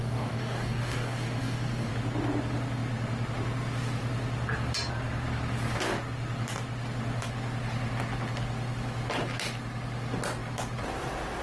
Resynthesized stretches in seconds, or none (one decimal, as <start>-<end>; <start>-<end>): 0.0-1.9